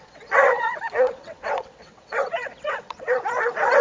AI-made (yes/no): yes